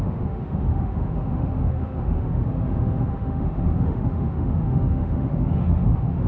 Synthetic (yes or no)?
yes